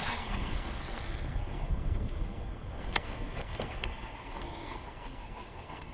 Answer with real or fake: fake